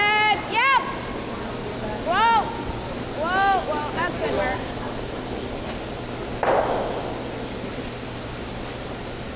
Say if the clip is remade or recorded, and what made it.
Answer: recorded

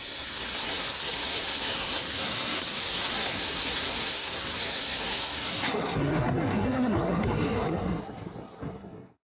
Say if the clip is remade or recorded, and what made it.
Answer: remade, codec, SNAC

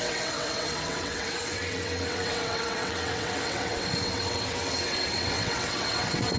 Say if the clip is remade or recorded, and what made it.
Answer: remade, vocoder, WaveNeXt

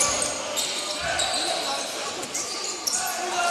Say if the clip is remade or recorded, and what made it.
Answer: recorded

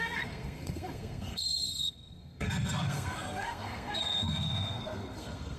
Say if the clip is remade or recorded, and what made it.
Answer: remade, codec, SNAC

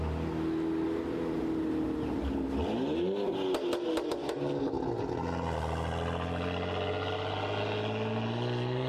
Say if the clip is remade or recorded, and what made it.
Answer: recorded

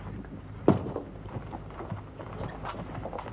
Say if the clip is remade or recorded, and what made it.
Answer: recorded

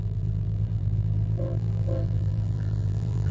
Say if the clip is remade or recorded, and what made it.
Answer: remade, vocoder, BigVGAN v2